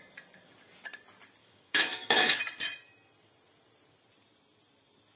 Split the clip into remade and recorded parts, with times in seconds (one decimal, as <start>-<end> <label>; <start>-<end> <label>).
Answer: 0.0-1.4 recorded; 1.4-2.4 remade; 2.4-5.2 recorded